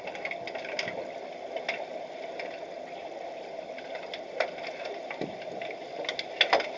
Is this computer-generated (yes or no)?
no